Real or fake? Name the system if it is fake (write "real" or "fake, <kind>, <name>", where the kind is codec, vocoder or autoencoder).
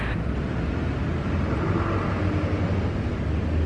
real